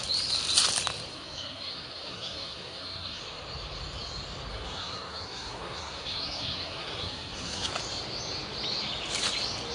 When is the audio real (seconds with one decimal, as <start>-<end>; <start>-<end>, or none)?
0.0-1.1; 3.2-4.5; 7.7-9.7